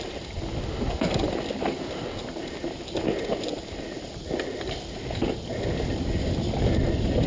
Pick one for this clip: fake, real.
real